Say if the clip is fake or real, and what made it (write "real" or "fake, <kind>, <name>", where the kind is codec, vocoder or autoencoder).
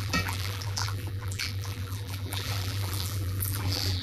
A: fake, vocoder, BigVGAN v2